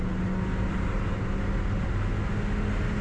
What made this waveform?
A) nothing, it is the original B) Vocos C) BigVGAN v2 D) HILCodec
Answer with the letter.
A